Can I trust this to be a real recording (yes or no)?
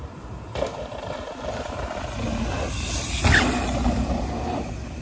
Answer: yes